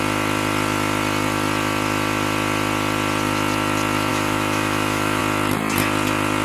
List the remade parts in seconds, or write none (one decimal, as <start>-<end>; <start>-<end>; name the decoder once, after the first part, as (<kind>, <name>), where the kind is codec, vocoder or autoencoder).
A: 4.1-5.2 (autoencoder, DAC-VAE)